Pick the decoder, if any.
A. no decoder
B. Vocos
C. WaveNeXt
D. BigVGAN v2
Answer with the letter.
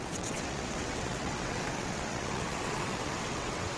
C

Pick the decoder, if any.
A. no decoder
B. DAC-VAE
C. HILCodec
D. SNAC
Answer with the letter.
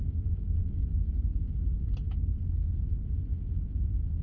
A